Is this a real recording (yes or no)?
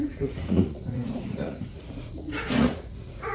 no